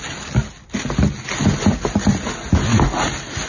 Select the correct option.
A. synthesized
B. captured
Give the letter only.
B